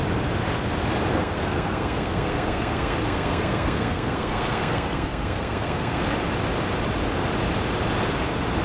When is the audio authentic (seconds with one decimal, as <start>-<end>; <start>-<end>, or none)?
0.0-1.2; 6.0-8.6